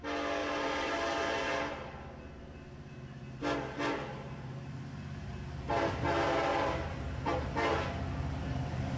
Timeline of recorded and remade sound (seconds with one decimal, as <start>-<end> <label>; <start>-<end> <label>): 0.0-0.4 recorded; 0.4-1.9 remade; 1.9-9.0 recorded